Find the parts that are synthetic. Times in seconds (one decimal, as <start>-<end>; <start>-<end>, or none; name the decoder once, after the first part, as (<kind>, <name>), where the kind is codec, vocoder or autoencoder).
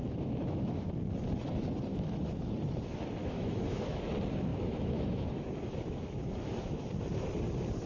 0.0-0.9 (autoencoder, DAC-VAE); 1.9-2.5; 3.2-4.0; 4.5-6.8